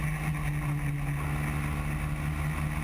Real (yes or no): yes